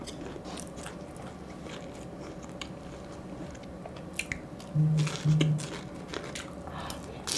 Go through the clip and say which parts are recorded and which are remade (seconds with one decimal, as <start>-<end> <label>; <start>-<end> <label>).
0.0-7.4 recorded